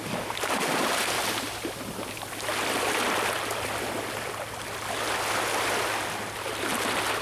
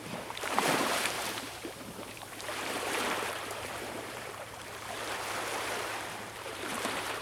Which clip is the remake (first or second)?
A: second